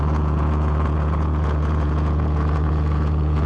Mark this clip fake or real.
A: fake